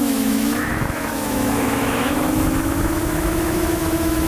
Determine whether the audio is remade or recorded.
remade